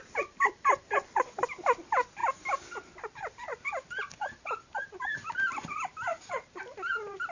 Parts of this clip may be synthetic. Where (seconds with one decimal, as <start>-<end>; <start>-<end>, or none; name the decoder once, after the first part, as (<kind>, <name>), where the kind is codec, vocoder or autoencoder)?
0.0-2.2 (vocoder, BigVGAN v2); 3.1-3.5; 5.1-7.3